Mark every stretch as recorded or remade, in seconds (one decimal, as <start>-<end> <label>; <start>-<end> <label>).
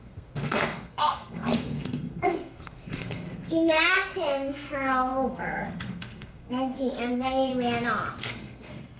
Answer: 0.0-7.5 remade; 7.5-8.2 recorded; 8.2-9.0 remade